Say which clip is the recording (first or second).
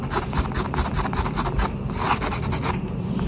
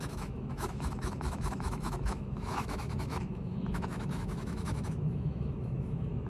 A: first